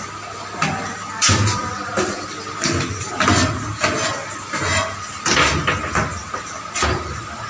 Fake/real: real